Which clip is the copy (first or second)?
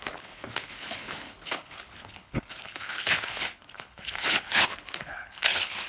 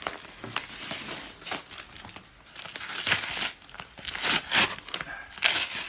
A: first